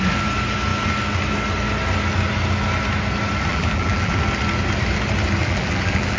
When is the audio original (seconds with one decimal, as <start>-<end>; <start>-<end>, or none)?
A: 0.0-3.5; 4.2-5.4